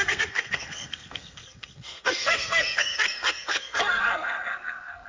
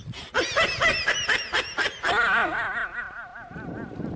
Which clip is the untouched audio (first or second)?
second